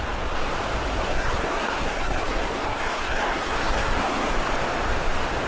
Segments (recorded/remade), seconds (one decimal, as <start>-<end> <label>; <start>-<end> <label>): 0.0-1.0 recorded; 1.0-4.3 remade; 4.3-5.5 recorded